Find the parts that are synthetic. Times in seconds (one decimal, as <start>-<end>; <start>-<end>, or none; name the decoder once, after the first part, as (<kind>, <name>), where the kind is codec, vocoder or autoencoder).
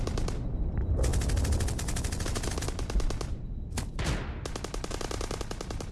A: none